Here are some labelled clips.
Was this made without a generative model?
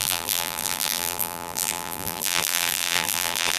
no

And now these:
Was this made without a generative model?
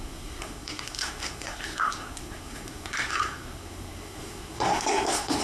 no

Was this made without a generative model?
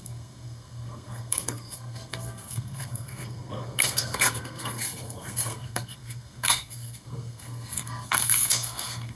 no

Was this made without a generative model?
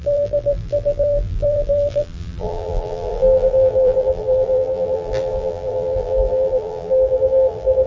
no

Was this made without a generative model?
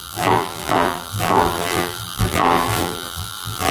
no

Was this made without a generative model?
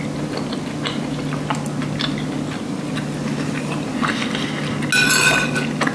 yes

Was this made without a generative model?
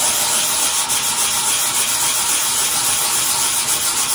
yes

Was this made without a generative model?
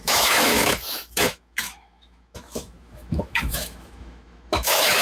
no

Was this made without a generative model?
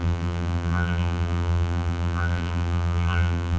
no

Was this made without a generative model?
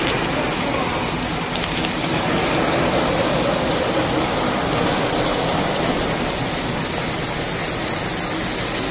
yes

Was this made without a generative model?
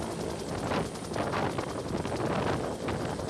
yes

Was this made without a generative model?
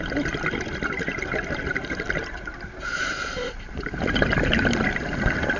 yes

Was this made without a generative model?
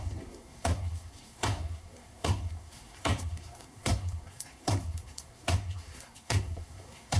no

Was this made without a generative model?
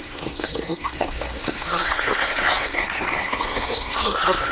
no